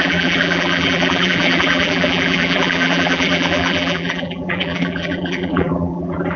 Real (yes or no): no